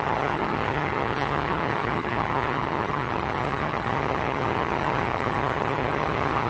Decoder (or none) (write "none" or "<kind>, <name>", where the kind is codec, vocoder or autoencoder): vocoder, HiFi-GAN